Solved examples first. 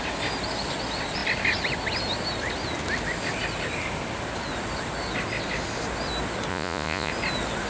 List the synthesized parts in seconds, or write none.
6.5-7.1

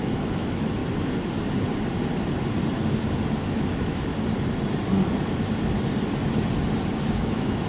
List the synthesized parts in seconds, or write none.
0.0-0.8; 3.6-4.1; 7.0-7.7

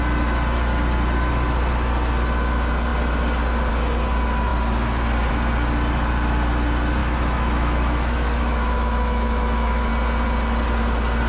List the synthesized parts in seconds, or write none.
7.0-9.9

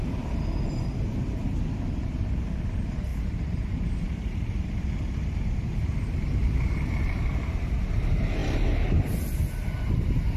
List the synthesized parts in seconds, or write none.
3.1-4.8; 6.4-7.7

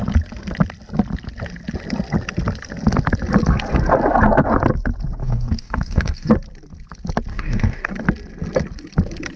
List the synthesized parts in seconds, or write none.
5.2-6.3; 7.3-7.9

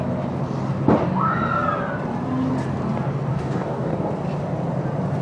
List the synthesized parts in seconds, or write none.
3.3-4.1

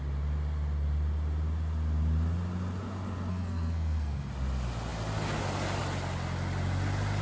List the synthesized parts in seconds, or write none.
3.3-4.3